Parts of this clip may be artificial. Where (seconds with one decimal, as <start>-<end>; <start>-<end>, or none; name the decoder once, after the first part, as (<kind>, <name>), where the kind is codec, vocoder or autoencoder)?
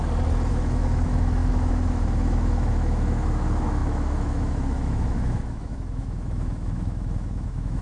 0.5-7.8 (autoencoder, DAC-VAE)